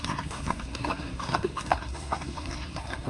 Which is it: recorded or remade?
remade